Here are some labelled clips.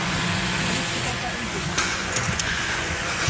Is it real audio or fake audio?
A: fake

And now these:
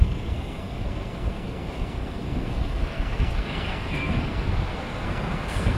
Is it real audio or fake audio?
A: fake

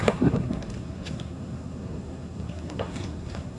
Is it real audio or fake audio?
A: fake